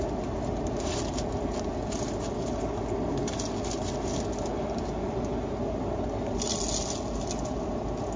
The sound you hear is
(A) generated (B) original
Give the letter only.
B